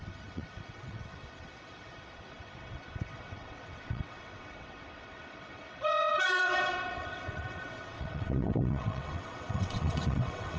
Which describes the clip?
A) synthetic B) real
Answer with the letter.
A